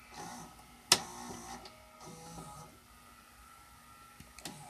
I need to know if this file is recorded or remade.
recorded